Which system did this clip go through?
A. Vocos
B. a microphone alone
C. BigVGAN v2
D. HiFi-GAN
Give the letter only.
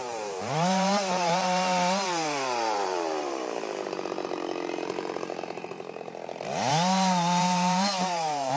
C